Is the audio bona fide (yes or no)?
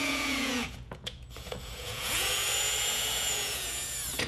no